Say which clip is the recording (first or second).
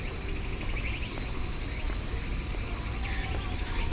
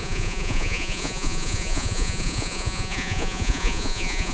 first